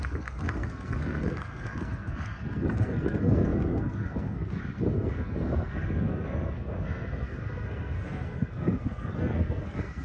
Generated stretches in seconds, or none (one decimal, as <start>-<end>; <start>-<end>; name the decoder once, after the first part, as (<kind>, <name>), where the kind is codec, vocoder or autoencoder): 0.0-10.0 (codec, SNAC)